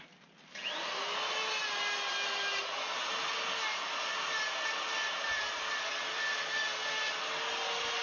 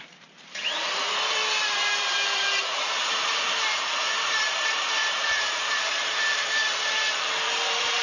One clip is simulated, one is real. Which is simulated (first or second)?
second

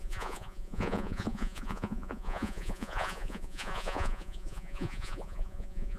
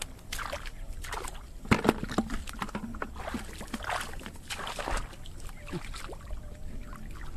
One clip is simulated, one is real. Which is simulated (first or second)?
first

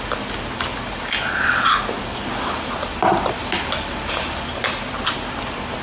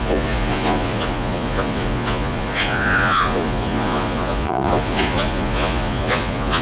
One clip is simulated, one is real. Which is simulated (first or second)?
second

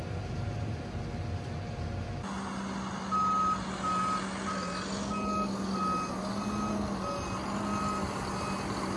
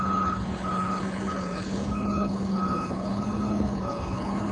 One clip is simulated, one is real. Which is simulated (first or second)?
second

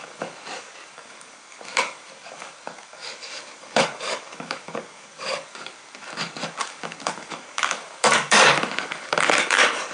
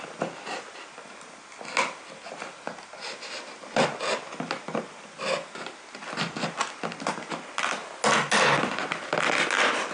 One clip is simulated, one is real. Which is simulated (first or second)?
first